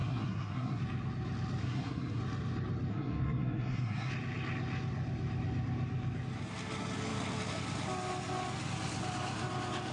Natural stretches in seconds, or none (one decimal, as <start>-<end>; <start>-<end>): 0.8-1.6; 2.2-2.9; 4.1-9.9